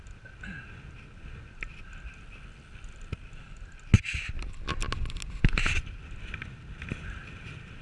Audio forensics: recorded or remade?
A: recorded